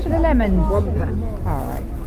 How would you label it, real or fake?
real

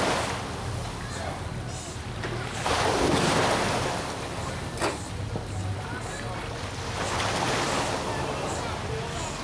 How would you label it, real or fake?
real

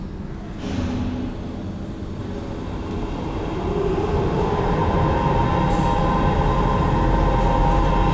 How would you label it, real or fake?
real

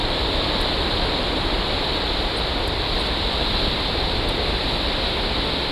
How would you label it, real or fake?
real